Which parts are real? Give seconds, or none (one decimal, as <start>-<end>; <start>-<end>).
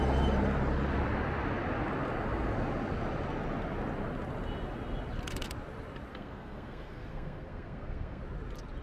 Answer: 0.0-6.1; 8.2-8.8